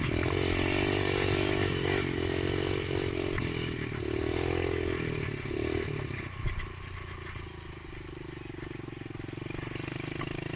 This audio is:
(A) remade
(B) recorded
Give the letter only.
B